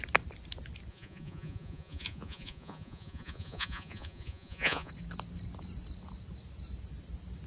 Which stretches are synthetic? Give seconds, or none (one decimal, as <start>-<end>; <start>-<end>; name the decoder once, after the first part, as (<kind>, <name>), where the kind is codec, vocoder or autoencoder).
0.9-4.9 (vocoder, Vocos)

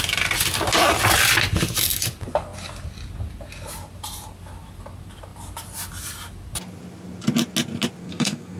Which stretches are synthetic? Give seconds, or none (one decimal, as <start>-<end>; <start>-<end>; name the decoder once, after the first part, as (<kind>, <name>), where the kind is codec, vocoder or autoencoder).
8.0-8.6 (codec, SNAC)

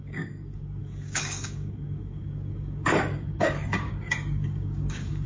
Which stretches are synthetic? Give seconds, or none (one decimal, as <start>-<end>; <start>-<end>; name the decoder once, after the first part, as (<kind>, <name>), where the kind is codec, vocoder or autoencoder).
0.0-5.3 (codec, DAC)

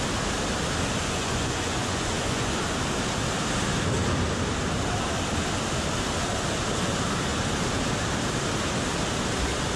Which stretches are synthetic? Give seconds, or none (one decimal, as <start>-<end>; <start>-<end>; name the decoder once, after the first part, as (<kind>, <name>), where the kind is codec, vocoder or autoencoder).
1.0-2.6 (vocoder, Vocos)

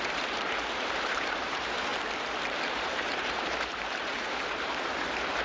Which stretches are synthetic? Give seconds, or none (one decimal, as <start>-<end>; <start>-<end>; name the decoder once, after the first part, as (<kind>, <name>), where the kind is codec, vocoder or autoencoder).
0.0-1.9 (vocoder, BigVGAN v2); 2.7-5.4

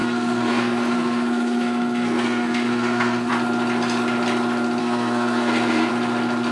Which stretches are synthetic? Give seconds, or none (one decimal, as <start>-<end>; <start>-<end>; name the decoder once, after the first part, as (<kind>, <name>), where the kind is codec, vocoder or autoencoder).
0.0-3.3 (codec, SNAC); 4.8-5.9

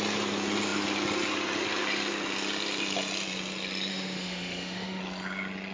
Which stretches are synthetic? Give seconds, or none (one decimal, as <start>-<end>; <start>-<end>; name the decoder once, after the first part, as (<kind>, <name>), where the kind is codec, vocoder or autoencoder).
3.9-5.0 (autoencoder, DAC-VAE)

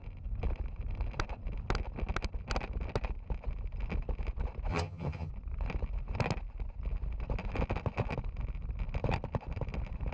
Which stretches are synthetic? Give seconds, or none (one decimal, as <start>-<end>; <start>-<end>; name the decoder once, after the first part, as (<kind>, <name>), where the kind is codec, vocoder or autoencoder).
4.7-5.3 (vocoder, HiFi-GAN)